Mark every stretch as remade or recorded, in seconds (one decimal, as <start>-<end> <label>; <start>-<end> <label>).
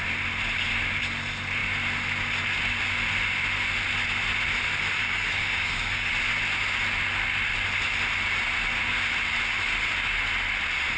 0.0-5.0 recorded; 5.0-6.1 remade; 6.1-11.0 recorded